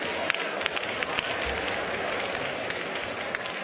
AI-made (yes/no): no